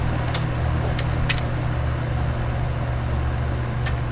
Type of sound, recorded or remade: recorded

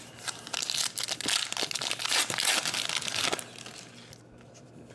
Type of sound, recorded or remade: recorded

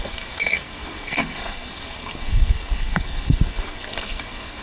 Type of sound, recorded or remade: remade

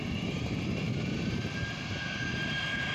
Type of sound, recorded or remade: recorded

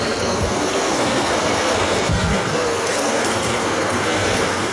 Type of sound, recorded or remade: remade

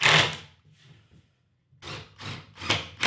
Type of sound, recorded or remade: recorded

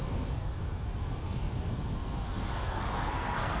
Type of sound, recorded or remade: remade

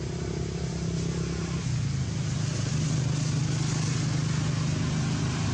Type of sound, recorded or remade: recorded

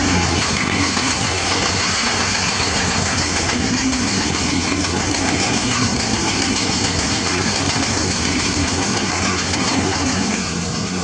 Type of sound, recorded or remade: remade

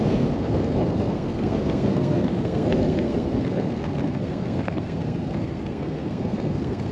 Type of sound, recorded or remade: remade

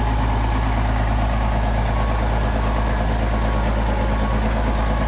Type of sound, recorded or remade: recorded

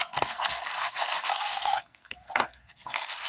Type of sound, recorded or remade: remade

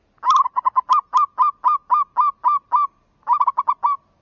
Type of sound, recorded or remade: recorded